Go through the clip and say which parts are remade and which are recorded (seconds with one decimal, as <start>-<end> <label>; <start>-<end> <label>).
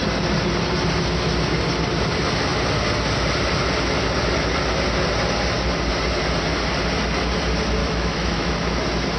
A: 0.0-7.8 recorded; 7.8-8.5 remade; 8.5-9.2 recorded